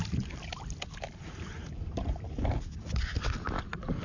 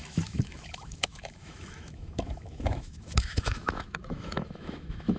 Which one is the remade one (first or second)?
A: second